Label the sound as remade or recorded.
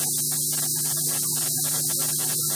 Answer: recorded